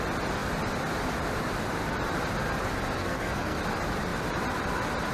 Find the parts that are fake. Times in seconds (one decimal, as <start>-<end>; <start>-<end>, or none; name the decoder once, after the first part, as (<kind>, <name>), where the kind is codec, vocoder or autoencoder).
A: 3.0-3.6 (codec, SNAC)